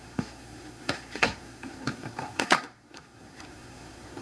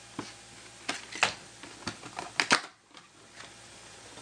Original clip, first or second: second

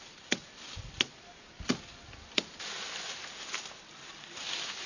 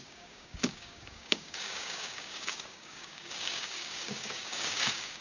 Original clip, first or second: first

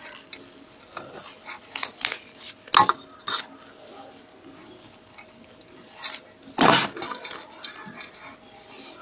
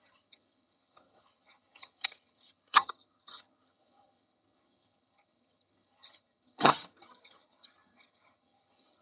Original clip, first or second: first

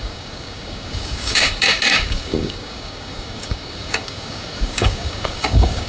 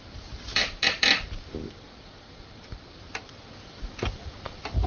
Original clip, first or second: second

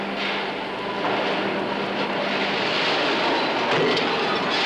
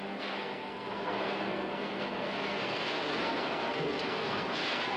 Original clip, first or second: first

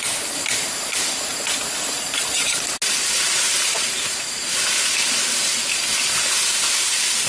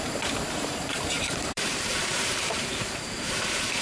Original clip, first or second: first